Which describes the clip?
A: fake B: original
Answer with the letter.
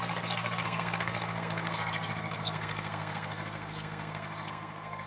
A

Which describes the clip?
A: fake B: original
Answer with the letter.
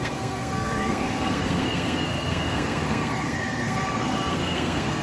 A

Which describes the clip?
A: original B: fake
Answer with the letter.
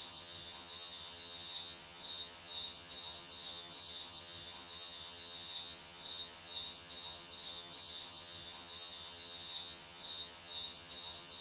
B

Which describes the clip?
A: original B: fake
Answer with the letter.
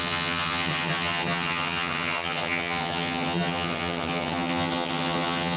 B